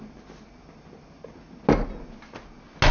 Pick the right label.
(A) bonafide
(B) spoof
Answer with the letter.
A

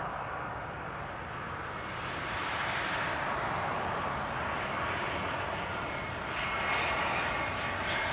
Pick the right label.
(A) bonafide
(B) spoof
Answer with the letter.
A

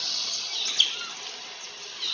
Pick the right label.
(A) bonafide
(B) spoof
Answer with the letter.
A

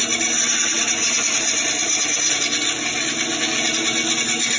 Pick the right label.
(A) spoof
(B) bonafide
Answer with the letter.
B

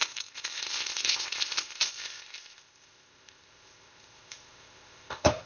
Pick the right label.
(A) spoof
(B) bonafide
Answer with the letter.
A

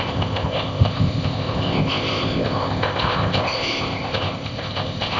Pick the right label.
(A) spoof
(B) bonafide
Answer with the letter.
A